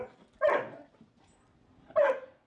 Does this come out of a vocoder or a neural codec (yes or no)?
yes